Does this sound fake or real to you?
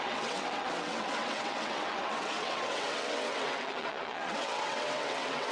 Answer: fake